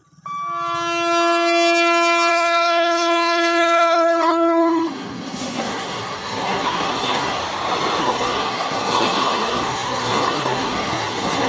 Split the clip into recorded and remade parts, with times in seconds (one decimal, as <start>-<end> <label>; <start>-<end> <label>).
0.0-2.3 recorded; 2.3-7.4 remade; 7.4-8.0 recorded; 8.0-11.5 remade